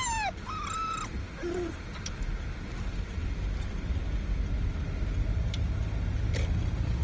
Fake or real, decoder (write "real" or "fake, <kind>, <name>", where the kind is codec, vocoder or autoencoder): real